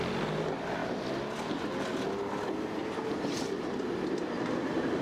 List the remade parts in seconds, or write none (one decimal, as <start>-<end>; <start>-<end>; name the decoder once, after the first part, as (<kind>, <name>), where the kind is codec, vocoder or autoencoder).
none